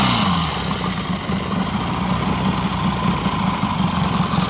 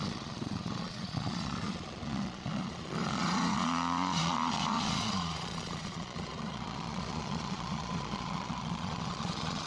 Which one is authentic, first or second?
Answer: first